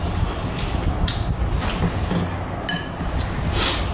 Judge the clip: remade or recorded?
recorded